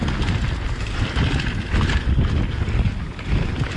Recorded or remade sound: recorded